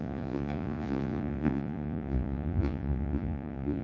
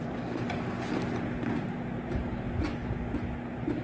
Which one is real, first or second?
second